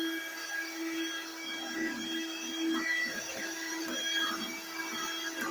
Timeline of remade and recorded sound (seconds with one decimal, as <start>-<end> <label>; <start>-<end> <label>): 0.0-0.4 recorded; 0.4-3.7 remade; 3.7-5.5 recorded